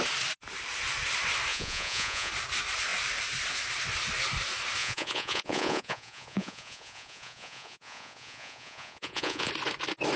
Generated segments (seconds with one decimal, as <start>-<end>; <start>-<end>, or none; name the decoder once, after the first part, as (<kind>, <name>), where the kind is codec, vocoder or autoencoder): 1.5-2.3 (vocoder, Vocos); 4.8-9.5